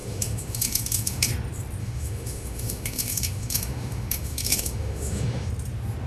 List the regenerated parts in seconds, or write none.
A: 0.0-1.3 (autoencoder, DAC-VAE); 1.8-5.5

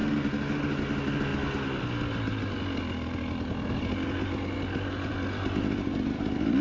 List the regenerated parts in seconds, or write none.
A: none

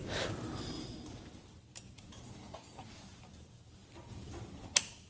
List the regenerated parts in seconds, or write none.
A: none

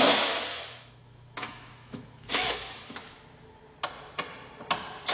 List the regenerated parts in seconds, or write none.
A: 0.5-3.2 (autoencoder, DAC-VAE)

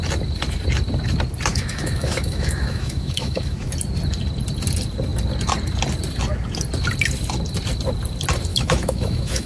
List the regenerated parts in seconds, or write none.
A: 1.5-3.7 (autoencoder, DAC-VAE); 8.5-9.5

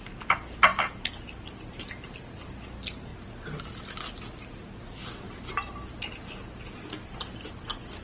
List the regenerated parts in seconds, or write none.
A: none

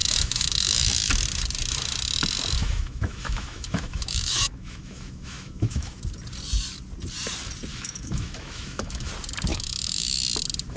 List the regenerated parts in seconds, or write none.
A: 0.0-1.1 (autoencoder, DAC-VAE); 2.6-6.0; 7.7-9.1; 9.5-10.2

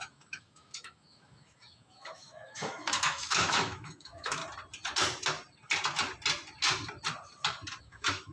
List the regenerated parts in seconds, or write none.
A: 0.0-4.4 (autoencoder, DAC-VAE); 7.8-8.3